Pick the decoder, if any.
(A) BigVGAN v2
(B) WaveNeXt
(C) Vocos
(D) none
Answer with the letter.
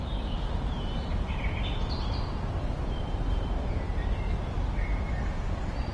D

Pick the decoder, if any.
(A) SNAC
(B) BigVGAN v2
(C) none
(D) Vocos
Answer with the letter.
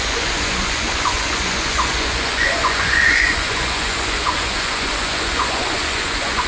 D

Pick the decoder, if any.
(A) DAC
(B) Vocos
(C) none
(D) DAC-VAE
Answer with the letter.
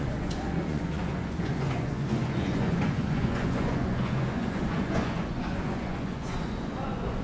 B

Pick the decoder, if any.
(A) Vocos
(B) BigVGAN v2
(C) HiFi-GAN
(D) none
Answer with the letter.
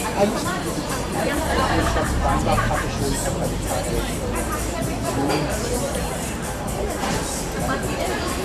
B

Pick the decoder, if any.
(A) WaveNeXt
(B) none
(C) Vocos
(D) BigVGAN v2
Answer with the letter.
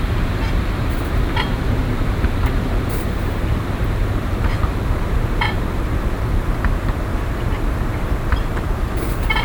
D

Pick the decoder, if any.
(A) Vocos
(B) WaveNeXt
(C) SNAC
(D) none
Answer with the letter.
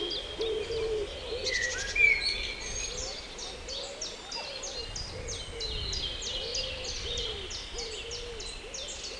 D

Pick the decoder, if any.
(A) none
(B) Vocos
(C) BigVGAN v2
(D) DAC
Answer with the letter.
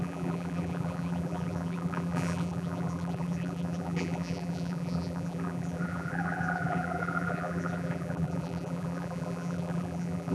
C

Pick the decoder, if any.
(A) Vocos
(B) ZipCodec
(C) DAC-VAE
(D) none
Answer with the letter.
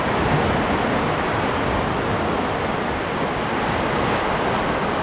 D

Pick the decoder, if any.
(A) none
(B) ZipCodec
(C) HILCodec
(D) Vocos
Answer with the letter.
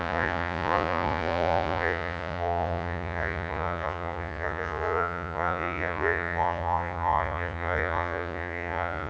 D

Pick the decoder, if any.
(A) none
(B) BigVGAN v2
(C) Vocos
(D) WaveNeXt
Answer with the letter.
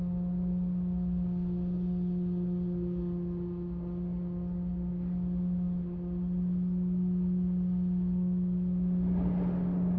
A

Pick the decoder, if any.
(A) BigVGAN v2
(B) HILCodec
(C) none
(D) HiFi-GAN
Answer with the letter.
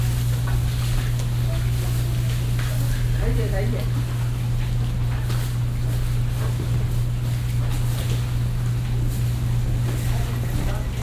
C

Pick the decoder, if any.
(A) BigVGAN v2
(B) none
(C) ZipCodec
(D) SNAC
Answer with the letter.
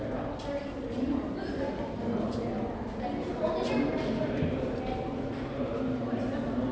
B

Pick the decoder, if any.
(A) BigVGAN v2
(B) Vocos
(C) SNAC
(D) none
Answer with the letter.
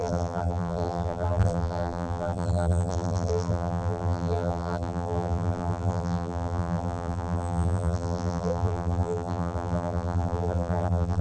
A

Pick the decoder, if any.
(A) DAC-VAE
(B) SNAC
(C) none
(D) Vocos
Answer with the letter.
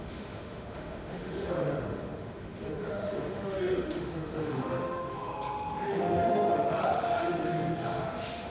A